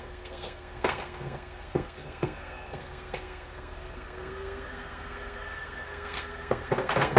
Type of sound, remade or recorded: remade